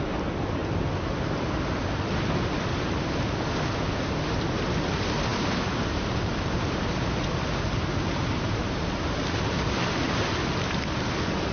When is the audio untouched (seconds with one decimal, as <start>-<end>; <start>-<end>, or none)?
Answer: 0.0-5.3; 10.2-11.5

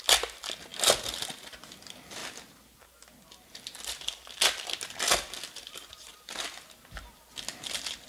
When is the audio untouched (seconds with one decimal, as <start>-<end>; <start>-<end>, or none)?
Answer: 0.7-1.3; 2.2-3.5; 6.1-8.1

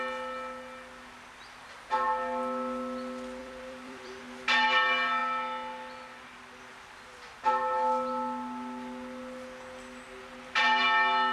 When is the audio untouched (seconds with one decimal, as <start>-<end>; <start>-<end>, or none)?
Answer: 0.0-3.4; 4.2-11.3

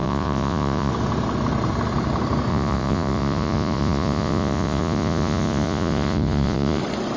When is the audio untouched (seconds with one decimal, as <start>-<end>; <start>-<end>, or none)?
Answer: 0.9-2.5; 6.8-7.2

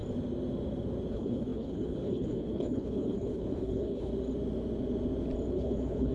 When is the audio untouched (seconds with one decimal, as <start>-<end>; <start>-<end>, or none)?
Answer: 0.0-1.1; 4.1-5.5